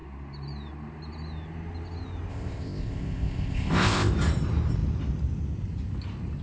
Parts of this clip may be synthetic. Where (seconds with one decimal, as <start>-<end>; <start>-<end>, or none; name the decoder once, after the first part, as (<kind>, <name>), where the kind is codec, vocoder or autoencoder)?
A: 2.3-4.1 (codec, ZipCodec)